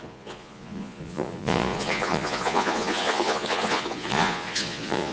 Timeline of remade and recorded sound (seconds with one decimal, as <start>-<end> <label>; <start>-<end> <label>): 0.0-5.1 remade